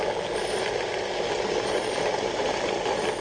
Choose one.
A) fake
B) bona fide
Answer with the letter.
B